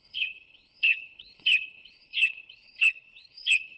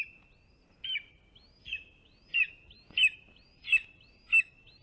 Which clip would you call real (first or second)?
second